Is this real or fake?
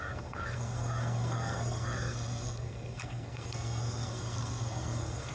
fake